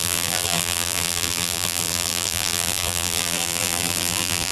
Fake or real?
fake